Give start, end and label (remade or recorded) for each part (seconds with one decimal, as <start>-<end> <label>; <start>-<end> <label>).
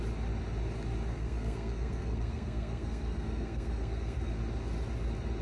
0.0-1.1 recorded; 1.1-4.3 remade; 4.3-5.4 recorded